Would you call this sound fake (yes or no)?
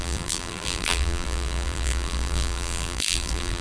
yes